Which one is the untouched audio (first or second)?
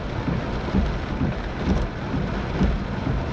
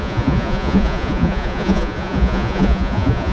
first